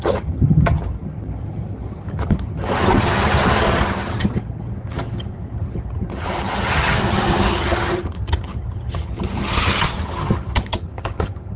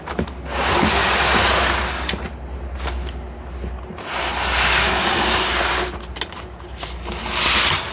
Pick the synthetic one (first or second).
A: first